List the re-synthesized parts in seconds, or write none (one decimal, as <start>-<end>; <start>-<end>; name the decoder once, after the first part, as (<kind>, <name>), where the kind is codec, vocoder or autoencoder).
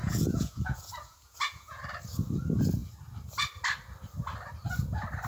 0.0-1.8 (vocoder, Vocos)